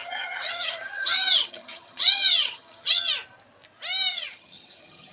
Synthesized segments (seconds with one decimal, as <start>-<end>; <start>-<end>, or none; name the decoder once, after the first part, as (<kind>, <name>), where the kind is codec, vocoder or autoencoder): 0.0-3.1 (vocoder, HiFi-GAN); 4.1-5.1